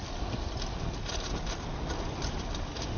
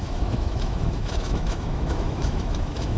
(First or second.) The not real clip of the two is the second